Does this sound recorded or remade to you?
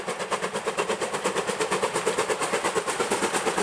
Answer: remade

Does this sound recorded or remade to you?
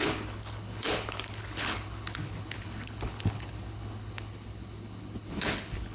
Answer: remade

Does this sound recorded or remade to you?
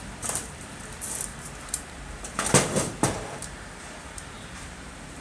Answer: remade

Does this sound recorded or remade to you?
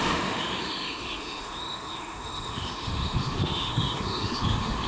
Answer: remade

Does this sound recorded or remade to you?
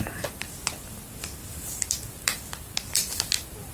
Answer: remade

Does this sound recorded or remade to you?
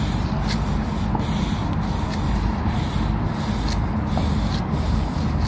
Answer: recorded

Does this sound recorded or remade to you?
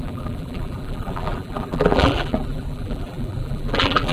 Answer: remade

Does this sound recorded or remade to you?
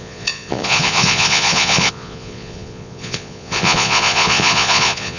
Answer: remade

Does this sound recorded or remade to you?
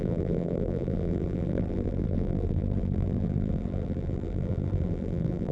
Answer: remade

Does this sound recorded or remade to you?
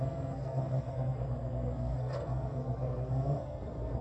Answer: remade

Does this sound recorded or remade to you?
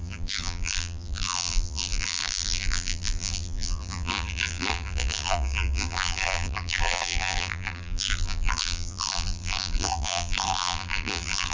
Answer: remade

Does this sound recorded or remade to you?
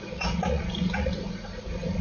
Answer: remade